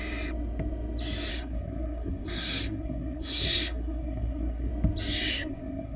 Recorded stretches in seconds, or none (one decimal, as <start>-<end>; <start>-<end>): 0.0-1.3; 4.7-5.3